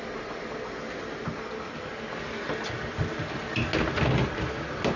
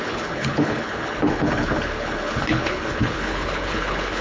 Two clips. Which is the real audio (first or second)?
first